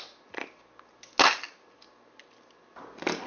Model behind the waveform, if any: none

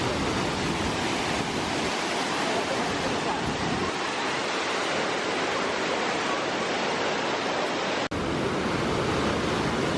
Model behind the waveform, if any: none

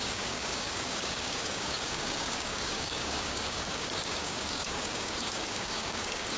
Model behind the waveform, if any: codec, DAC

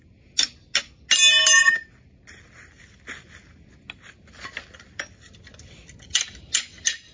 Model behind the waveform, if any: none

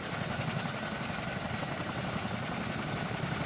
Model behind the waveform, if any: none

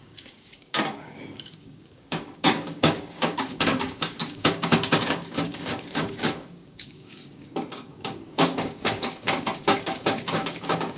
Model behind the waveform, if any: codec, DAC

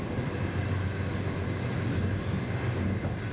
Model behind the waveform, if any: none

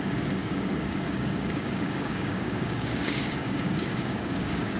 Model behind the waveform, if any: codec, DAC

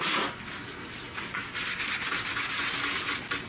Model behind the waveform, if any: none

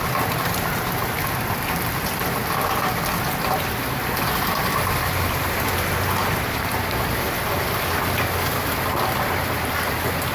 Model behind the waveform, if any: none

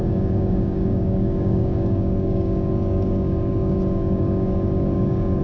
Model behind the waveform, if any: codec, DAC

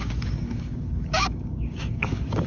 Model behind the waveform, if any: codec, DAC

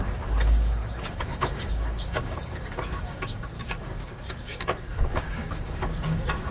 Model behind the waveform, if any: codec, DAC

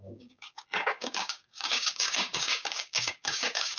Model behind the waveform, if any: codec, DAC